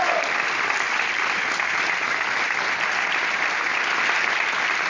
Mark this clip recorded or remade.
recorded